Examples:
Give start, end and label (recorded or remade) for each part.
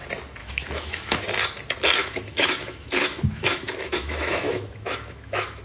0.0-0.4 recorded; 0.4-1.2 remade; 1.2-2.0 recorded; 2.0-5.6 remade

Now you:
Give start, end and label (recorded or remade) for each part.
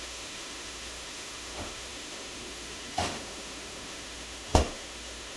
0.0-5.4 remade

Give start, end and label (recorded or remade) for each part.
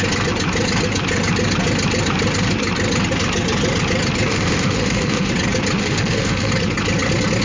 0.0-4.3 recorded; 4.3-5.3 remade; 5.3-5.8 recorded; 5.8-6.5 remade; 6.5-7.4 recorded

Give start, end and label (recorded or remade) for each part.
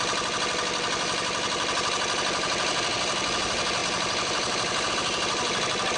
0.0-6.0 recorded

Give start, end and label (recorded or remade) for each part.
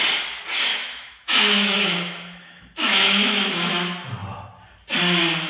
0.0-0.7 recorded; 0.7-3.7 remade; 3.7-5.5 recorded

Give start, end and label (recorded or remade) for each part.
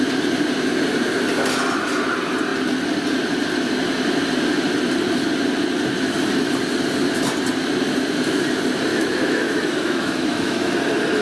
0.0-8.9 recorded; 8.9-10.7 remade; 10.7-11.2 recorded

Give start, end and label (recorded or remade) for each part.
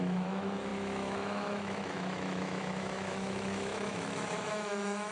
0.0-5.1 remade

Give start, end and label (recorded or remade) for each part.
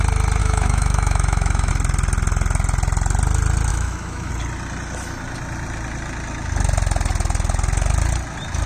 0.0-0.4 recorded; 0.4-1.7 remade; 1.7-3.7 recorded; 3.7-4.3 remade; 4.3-8.7 recorded